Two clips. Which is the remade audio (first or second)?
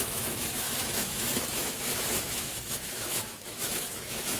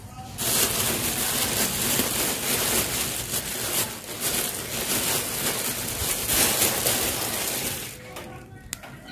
first